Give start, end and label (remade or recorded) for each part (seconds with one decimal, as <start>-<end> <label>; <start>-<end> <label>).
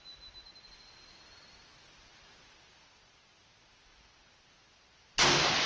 0.0-5.7 recorded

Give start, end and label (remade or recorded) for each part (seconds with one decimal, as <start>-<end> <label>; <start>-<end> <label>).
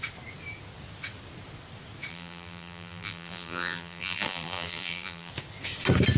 0.0-2.1 recorded; 2.1-5.3 remade; 5.3-6.2 recorded